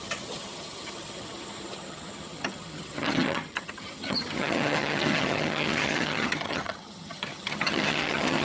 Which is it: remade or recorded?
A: remade